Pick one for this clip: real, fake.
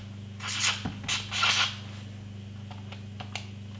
real